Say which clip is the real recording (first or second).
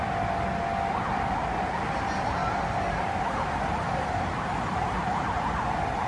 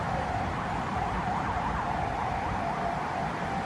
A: first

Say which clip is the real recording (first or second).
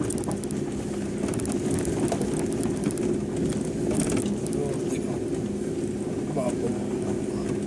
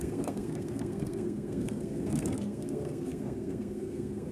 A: first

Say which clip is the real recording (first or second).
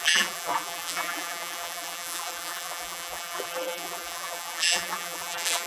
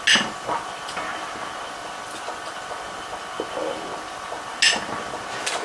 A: second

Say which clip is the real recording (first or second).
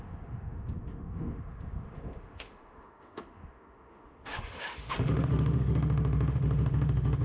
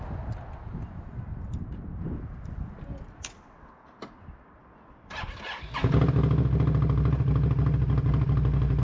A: second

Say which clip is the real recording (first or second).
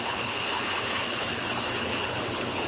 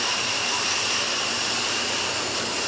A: second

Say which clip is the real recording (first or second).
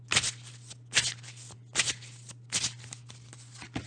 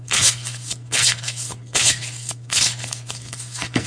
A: first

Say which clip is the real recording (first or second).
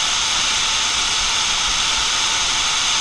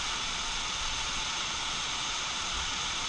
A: first